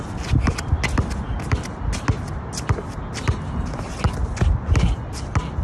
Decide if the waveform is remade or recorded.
recorded